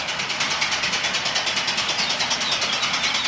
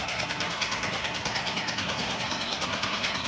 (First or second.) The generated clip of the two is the second